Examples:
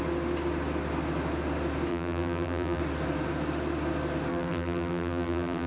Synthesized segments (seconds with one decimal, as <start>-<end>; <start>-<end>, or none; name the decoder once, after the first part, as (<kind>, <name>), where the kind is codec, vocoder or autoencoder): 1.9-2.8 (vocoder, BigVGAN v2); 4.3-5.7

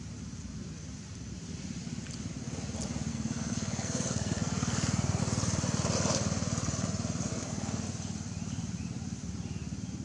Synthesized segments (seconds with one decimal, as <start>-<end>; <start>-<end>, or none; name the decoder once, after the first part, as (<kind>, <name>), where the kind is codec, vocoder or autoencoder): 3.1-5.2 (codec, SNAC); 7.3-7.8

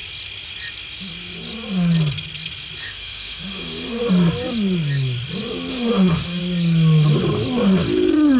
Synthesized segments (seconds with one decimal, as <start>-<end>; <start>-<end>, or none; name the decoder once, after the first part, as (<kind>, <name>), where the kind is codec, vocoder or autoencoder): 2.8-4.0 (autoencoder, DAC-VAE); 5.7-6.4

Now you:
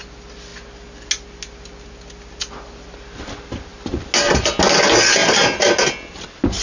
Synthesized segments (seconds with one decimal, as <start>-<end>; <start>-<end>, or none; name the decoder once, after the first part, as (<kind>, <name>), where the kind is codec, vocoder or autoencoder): none

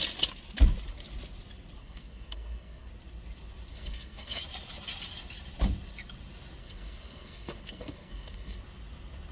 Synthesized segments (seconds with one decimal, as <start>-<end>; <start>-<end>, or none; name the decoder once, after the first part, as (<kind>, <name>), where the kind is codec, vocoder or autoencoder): 1.8-2.9 (codec, SNAC); 3.7-4.4; 6.6-8.6

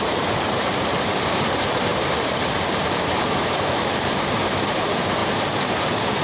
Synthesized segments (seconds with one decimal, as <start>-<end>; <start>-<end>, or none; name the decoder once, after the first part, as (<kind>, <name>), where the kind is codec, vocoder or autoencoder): 0.0-6.2 (vocoder, BigVGAN v2)

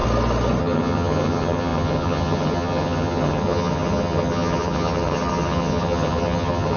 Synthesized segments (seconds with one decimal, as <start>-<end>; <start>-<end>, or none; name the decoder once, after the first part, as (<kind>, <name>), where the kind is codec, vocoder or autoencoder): 0.6-6.8 (vocoder, HiFi-GAN)

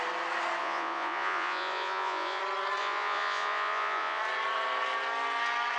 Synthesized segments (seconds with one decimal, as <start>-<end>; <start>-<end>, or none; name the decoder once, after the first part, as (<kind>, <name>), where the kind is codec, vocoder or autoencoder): 0.6-2.4 (vocoder, Vocos); 2.8-4.2